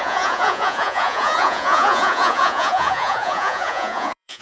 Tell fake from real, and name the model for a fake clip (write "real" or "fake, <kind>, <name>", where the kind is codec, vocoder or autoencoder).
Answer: fake, vocoder, Vocos